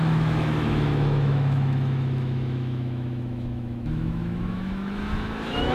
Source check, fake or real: fake